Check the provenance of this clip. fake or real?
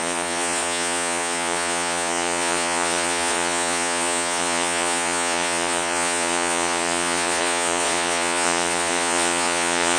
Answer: fake